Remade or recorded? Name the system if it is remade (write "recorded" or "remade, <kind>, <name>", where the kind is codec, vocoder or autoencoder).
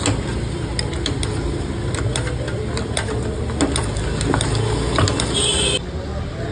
recorded